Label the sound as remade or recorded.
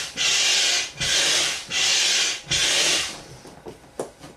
recorded